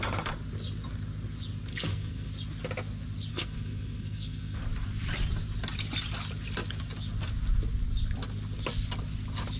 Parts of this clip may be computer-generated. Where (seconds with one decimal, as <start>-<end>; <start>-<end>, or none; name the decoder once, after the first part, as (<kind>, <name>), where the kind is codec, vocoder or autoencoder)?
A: 1.7-2.3 (codec, SNAC); 3.3-4.6